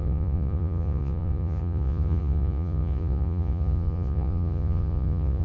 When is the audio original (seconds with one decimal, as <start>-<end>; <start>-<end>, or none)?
none